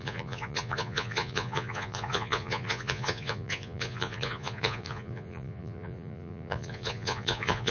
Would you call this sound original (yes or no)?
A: no